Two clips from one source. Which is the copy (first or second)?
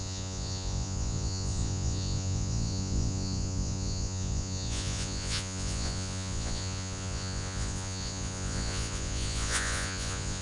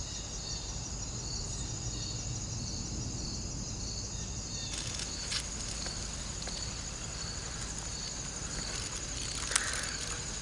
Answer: first